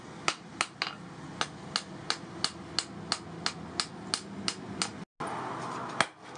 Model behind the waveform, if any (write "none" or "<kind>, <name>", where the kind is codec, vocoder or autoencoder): none